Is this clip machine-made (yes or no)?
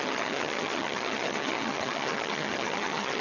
yes